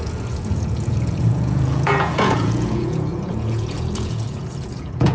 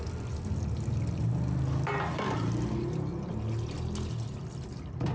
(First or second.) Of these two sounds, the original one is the second